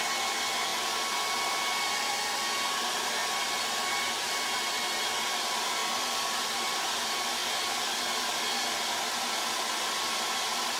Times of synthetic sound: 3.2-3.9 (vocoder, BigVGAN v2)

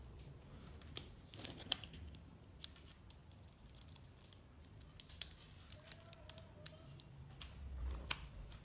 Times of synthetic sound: none

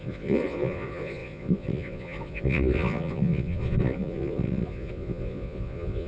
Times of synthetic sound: 0.0-6.1 (vocoder, Vocos)

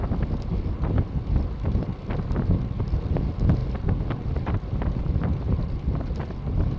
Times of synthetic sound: none

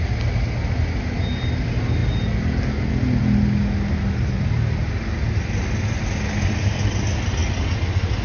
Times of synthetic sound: none